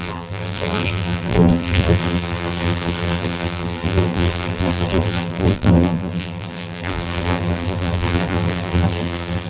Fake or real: fake